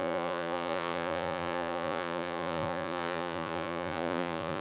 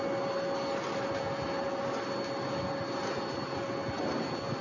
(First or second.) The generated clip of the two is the first